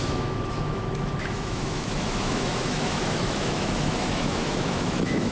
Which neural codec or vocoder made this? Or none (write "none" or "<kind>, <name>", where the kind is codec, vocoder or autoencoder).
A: autoencoder, DAC-VAE